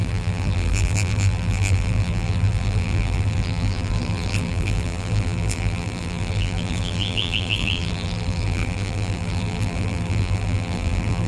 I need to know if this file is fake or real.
fake